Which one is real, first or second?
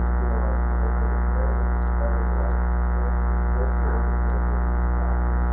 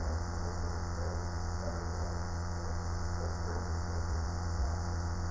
first